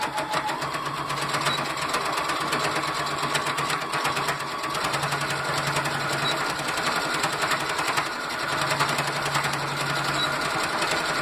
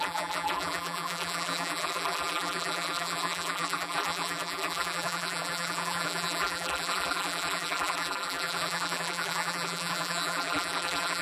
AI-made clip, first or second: second